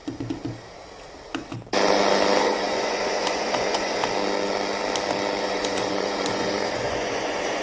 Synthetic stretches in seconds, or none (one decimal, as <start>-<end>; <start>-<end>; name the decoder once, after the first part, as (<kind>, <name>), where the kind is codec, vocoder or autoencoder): 2.4-4.0 (vocoder, Vocos); 5.4-7.6